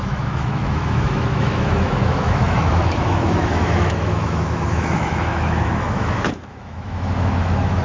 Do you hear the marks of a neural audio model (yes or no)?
yes